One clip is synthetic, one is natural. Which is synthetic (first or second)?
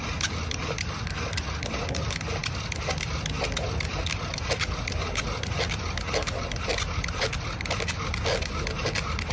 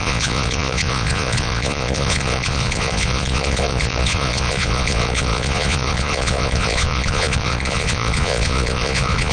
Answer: second